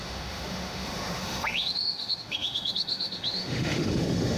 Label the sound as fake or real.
fake